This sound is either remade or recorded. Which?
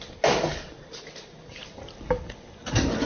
recorded